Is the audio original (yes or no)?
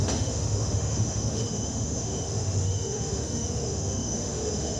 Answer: no